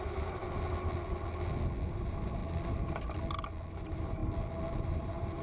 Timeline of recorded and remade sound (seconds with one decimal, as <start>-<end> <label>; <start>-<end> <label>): 0.0-0.4 remade; 0.4-1.9 recorded; 1.9-2.4 remade; 2.4-3.7 recorded; 3.7-4.2 remade; 4.2-4.8 recorded; 4.8-5.4 remade

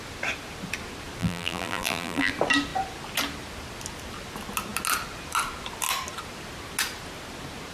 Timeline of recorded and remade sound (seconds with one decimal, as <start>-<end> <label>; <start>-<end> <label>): 0.0-1.2 recorded; 1.2-2.3 remade; 2.3-7.7 recorded

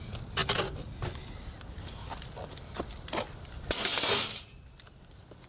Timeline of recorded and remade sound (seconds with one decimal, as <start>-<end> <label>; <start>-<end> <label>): 0.0-5.5 recorded

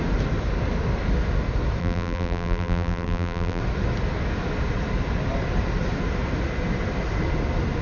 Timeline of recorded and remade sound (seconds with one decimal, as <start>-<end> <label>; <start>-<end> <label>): 0.0-1.8 recorded; 1.8-3.6 remade; 3.6-7.8 recorded

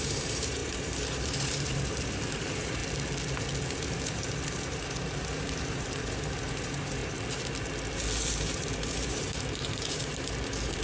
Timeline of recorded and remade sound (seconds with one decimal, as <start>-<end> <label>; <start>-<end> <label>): 0.0-2.8 remade; 2.8-3.7 recorded; 3.7-7.0 remade; 7.0-8.2 recorded; 8.2-10.8 remade